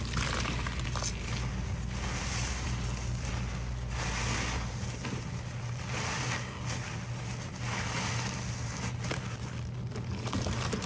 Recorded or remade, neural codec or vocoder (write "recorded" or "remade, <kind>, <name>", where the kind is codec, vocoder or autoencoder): recorded